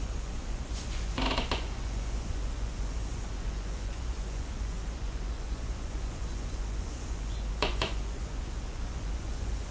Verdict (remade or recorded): remade